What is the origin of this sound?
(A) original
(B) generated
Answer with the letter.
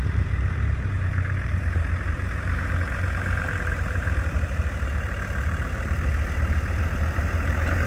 B